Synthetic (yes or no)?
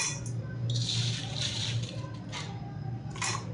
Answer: no